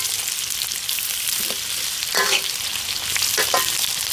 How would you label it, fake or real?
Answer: fake